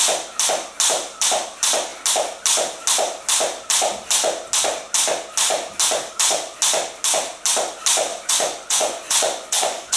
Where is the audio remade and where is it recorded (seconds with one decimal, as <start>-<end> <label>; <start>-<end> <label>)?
0.0-8.1 recorded; 8.1-10.0 remade